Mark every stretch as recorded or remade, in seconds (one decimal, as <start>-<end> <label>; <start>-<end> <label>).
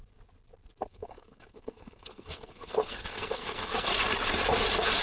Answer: 0.0-0.9 recorded; 0.9-3.9 remade; 3.9-5.0 recorded